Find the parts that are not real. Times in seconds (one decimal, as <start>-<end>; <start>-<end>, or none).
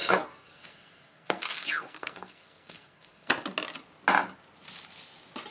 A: 0.0-3.3